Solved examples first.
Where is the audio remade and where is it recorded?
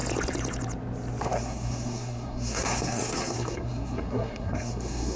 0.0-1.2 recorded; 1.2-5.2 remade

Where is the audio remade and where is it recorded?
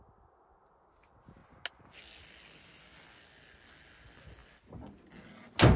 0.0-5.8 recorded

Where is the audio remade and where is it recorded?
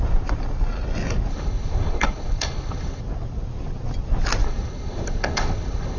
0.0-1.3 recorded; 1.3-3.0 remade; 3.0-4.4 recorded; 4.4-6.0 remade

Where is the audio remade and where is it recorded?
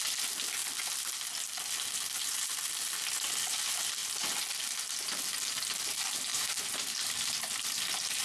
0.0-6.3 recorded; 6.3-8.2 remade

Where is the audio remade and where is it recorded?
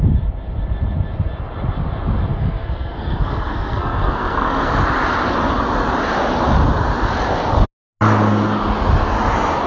0.0-2.3 recorded; 2.3-4.7 remade; 4.7-9.7 recorded